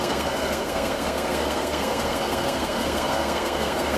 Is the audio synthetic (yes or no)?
yes